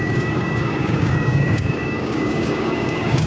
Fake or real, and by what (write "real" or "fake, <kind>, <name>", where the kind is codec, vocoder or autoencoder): fake, codec, DAC